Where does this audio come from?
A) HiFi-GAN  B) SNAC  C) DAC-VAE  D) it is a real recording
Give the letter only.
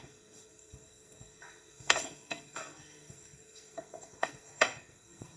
B